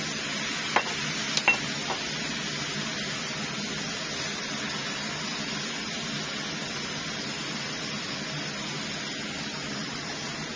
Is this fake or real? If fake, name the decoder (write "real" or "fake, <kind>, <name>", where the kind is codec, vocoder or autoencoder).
real